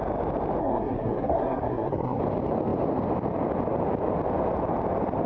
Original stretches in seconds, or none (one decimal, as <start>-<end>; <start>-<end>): 0.0-0.6; 2.2-5.3